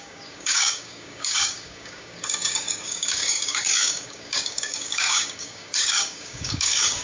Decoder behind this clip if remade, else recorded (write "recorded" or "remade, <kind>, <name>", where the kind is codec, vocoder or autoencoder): remade, codec, DAC